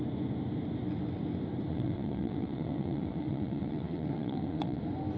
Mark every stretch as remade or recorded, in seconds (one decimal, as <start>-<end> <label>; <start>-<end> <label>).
0.0-1.7 recorded; 1.7-4.8 remade; 4.8-5.2 recorded